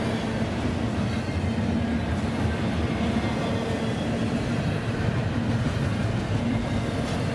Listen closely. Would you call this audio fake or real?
real